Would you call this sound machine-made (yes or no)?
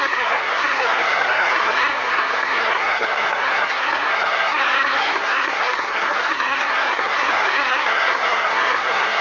yes